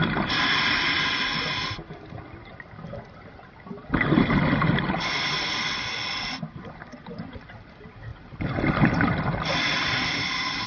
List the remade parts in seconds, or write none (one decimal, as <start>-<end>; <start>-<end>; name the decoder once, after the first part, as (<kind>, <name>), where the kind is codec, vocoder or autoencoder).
none